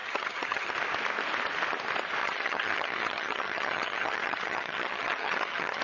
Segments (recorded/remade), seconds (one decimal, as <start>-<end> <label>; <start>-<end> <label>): 0.0-0.7 remade; 0.7-2.2 recorded; 2.2-5.8 remade